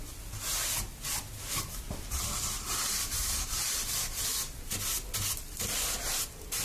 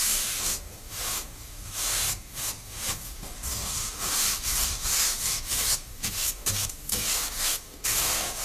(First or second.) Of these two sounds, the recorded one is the first